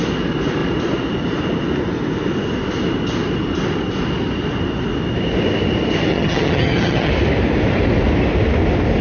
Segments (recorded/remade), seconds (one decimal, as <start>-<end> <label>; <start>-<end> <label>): 0.0-6.1 recorded; 6.1-7.1 remade; 7.1-9.0 recorded